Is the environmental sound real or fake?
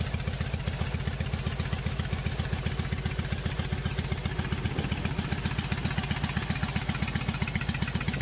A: real